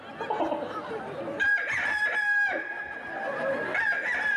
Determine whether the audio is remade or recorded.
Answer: recorded